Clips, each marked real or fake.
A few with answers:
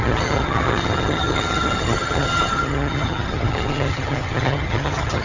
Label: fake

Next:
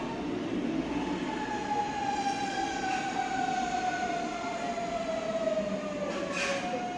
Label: real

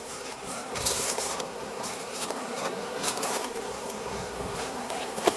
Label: fake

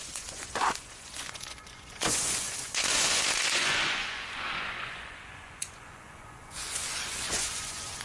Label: fake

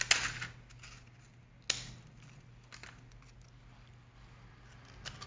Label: real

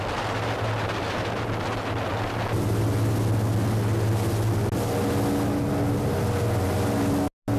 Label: real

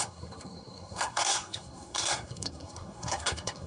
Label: fake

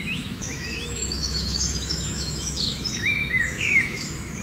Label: fake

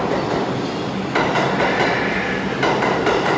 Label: real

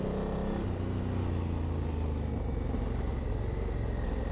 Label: real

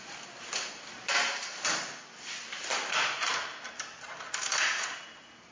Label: fake